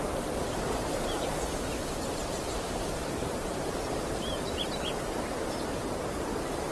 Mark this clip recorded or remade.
remade